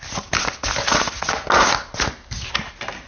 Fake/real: real